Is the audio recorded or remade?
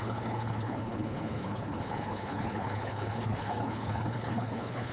remade